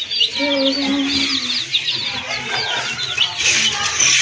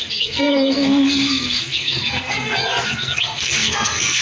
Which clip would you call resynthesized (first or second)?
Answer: second